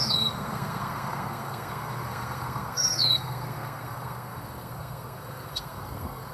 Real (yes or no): no